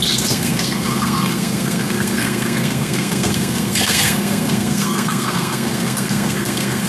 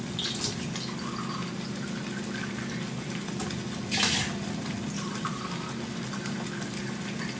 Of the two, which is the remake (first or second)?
first